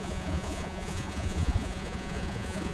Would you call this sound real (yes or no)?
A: no